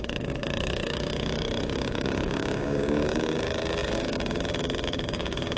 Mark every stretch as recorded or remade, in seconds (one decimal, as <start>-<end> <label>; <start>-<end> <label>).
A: 0.0-5.6 remade